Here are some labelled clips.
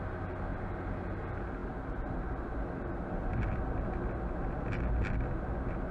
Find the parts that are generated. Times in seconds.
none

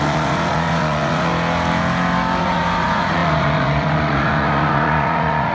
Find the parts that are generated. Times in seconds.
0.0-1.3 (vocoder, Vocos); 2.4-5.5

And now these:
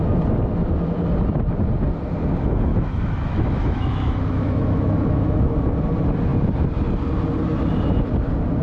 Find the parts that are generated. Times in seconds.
2.7-5.4 (autoencoder, DAC-VAE)

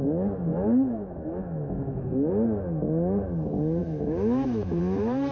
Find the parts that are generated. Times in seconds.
0.5-2.3 (autoencoder, DAC-VAE); 3.8-4.8

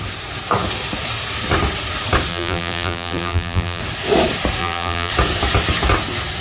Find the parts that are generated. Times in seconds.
2.3-3.8 (vocoder, BigVGAN v2); 4.6-5.1

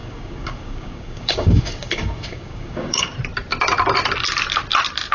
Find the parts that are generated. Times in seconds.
0.0-3.1 (codec, DAC)

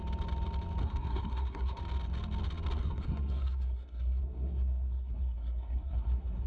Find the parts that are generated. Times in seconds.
0.8-1.8 (codec, SNAC); 2.8-6.5